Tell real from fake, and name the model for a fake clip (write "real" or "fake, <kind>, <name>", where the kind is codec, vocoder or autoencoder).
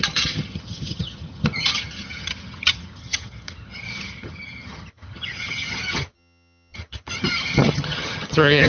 fake, vocoder, HiFi-GAN